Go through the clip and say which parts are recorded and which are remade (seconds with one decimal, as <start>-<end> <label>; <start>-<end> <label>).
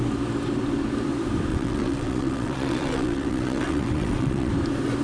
0.0-1.5 recorded; 1.5-4.5 remade; 4.5-5.0 recorded